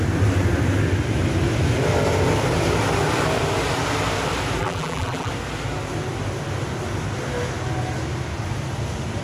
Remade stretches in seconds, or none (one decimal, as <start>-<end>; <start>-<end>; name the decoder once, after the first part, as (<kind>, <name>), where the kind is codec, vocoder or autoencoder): 4.6-5.3 (vocoder, BigVGAN v2)